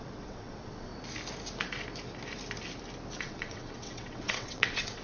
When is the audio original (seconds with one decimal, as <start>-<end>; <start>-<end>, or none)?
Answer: 0.9-3.2